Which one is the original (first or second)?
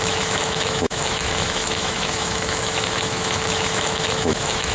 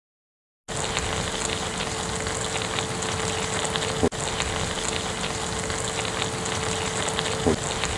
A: second